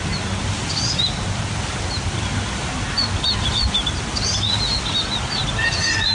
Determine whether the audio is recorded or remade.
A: recorded